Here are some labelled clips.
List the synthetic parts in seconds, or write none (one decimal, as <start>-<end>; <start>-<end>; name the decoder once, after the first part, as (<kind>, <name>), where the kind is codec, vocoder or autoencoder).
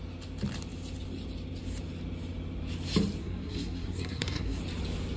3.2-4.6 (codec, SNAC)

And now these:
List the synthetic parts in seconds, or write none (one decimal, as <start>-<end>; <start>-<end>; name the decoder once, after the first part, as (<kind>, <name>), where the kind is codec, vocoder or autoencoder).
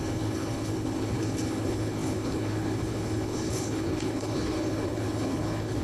0.0-5.8 (codec, HILCodec)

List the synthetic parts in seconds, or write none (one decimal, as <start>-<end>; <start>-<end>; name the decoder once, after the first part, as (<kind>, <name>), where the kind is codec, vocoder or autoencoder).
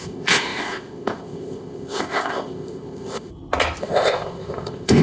0.0-3.3 (codec, ZipCodec); 3.8-5.0